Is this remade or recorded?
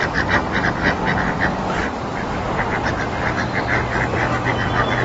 recorded